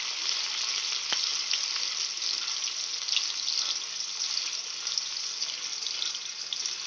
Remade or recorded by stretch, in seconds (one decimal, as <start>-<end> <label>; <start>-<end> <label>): 0.0-6.9 recorded